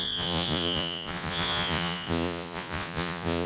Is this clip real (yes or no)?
no